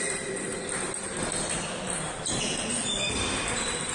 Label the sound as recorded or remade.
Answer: recorded